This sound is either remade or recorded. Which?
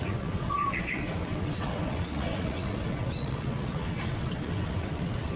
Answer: remade